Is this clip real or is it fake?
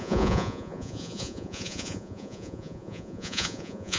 fake